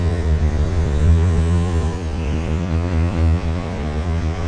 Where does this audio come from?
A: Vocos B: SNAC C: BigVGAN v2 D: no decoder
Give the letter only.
A